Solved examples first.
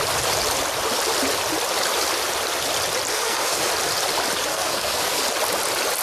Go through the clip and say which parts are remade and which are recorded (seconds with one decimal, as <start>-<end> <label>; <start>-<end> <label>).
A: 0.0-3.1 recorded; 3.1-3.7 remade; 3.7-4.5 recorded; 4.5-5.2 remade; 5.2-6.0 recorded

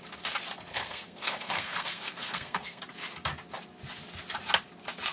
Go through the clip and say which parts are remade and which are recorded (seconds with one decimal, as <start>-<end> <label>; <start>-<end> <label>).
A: 0.0-0.7 recorded; 0.7-2.8 remade; 2.8-5.1 recorded

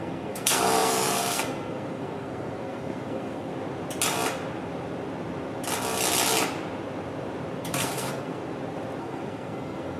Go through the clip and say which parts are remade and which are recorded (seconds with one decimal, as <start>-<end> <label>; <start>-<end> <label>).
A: 0.0-3.5 remade; 3.5-7.6 recorded; 7.6-8.4 remade; 8.4-9.0 recorded; 9.0-10.0 remade

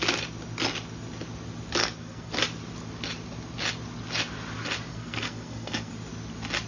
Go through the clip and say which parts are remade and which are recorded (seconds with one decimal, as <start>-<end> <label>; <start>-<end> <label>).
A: 0.0-1.8 recorded; 1.8-2.3 remade; 2.3-4.9 recorded; 4.9-5.9 remade; 5.9-6.7 recorded

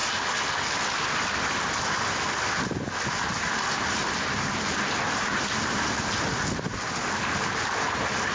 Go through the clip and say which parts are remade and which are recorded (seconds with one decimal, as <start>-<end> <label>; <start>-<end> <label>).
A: 0.0-8.3 recorded